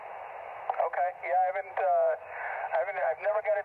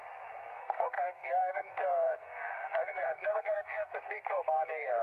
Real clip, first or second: first